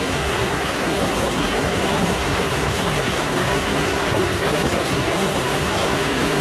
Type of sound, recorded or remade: remade